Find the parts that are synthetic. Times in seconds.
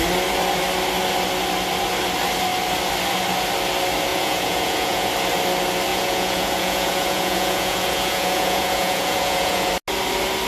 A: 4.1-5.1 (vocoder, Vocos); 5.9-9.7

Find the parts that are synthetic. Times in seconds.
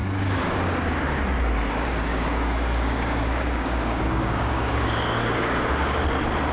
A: 0.0-0.6 (codec, DAC); 2.1-6.0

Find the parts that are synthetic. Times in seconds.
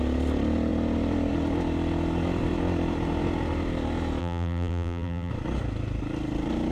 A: 4.2-5.3 (vocoder, BigVGAN v2)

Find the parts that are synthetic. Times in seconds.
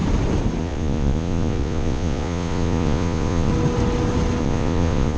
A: 0.6-3.5 (vocoder, Vocos); 4.4-5.2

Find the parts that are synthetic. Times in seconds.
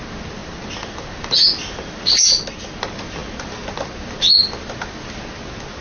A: none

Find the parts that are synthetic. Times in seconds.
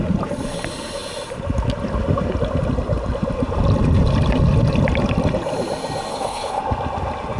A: 6.1-6.6 (codec, HILCodec)